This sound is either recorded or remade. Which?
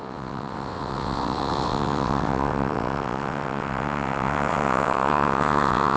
remade